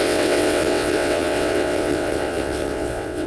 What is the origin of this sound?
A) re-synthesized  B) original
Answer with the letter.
A